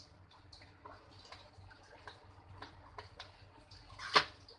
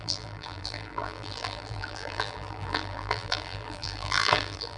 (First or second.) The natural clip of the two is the first